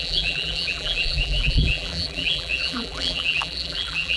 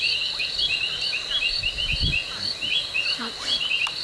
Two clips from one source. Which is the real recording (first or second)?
second